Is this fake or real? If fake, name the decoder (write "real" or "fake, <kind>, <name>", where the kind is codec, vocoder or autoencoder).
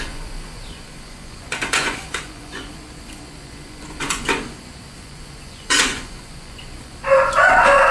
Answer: fake, vocoder, Vocos